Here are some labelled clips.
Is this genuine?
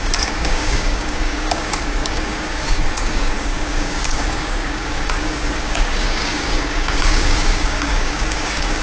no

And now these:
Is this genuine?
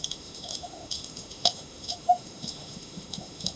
no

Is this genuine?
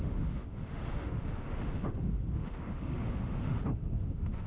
no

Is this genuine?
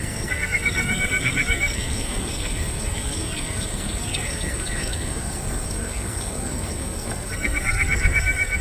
no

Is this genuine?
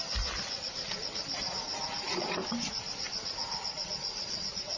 yes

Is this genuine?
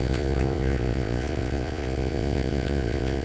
no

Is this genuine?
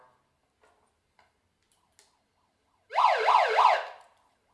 yes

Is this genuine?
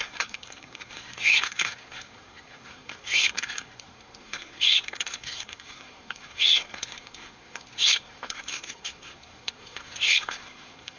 no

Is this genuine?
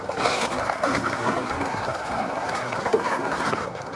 no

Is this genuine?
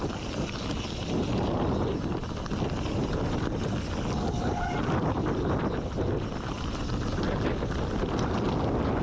yes